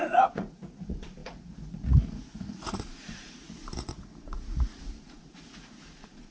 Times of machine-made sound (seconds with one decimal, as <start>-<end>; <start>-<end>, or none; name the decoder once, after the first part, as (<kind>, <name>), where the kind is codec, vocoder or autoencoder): 0.0-6.3 (vocoder, Vocos)